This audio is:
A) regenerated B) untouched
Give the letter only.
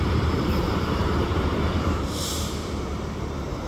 A